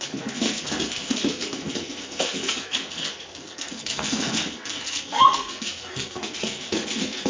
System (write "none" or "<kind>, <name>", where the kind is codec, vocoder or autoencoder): codec, SNAC